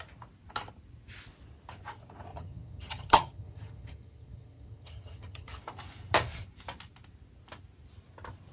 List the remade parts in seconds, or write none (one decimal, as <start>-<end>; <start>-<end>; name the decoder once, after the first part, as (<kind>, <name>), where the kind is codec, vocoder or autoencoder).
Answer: 2.3-5.6 (vocoder, HiFi-GAN)